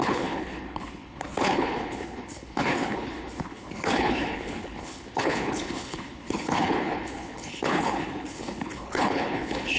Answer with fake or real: fake